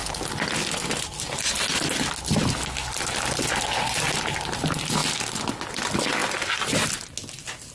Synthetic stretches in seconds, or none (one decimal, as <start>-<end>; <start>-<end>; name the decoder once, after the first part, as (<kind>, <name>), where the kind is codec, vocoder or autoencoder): none